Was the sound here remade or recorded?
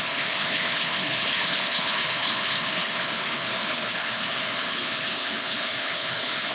remade